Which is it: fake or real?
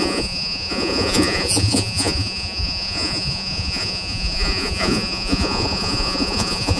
fake